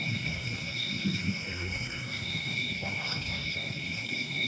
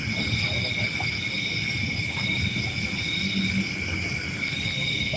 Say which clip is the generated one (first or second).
first